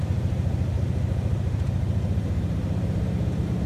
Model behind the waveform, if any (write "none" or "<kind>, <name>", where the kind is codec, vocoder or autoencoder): vocoder, BigVGAN v2